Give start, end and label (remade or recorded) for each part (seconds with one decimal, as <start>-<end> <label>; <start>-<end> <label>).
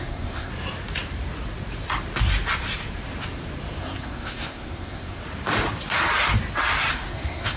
0.0-0.5 remade; 0.5-3.8 recorded; 3.8-5.2 remade; 5.2-6.9 recorded; 6.9-7.6 remade